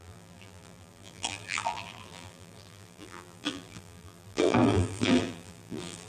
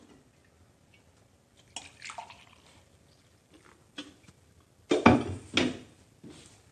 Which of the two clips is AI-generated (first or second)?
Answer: first